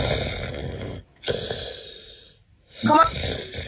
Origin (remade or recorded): recorded